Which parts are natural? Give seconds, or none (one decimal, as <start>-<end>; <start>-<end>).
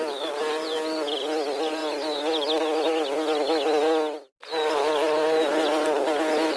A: 0.0-6.6